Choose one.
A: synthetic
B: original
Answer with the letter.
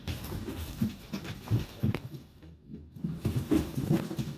A